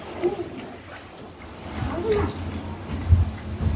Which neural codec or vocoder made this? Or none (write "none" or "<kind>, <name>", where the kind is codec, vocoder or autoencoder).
none